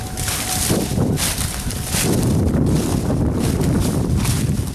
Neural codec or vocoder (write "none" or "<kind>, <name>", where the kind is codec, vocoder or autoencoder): vocoder, BigVGAN v2